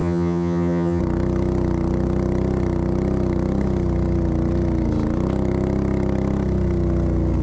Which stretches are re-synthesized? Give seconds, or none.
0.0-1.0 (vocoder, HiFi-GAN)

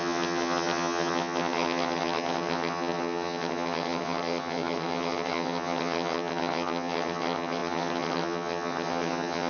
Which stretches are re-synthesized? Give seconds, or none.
0.0-9.5 (vocoder, HiFi-GAN)

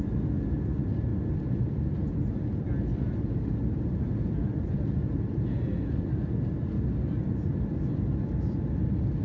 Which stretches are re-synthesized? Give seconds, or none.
none